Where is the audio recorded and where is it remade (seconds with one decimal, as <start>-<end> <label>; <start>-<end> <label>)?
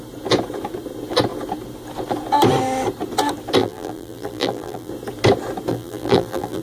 0.0-3.6 recorded; 3.6-4.9 remade; 4.9-5.7 recorded; 5.7-6.6 remade